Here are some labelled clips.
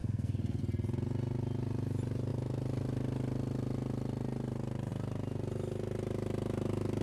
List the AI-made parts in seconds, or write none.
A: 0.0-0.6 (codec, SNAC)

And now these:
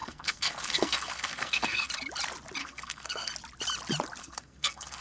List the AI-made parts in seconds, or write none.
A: 0.0-1.9 (codec, SNAC); 2.6-3.3; 4.2-5.0

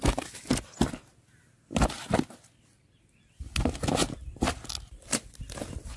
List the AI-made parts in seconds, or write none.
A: none